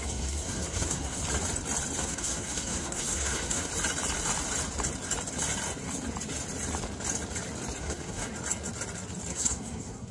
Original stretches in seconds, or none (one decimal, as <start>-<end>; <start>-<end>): 1.2-2.0; 3.7-7.8; 8.3-9.3